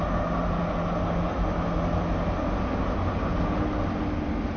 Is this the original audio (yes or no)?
yes